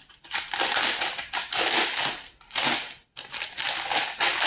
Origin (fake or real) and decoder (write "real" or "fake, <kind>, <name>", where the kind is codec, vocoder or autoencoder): real